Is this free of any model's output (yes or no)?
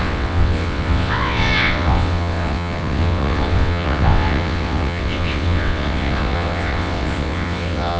no